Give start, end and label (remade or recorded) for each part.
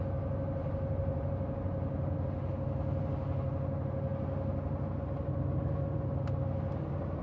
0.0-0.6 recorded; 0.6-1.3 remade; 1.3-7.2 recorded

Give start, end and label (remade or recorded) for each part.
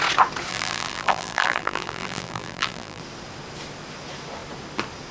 0.0-0.5 recorded; 0.5-3.0 remade; 3.0-5.1 recorded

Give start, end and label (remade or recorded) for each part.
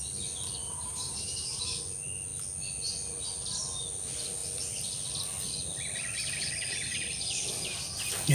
0.0-0.6 recorded; 0.6-1.6 remade; 1.6-8.3 recorded